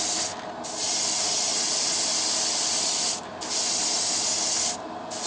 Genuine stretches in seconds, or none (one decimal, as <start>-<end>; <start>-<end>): 0.0-5.3